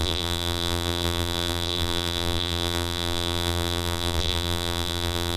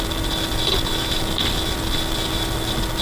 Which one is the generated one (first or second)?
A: first